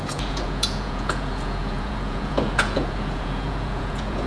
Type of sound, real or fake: fake